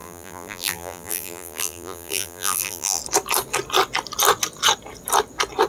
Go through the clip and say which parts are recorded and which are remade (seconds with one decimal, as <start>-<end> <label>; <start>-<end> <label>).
0.0-3.0 remade; 3.0-5.7 recorded